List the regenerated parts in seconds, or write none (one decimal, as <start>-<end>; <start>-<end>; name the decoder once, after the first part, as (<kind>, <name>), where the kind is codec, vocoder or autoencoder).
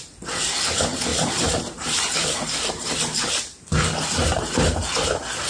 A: 1.1-3.0 (vocoder, BigVGAN v2); 4.2-4.8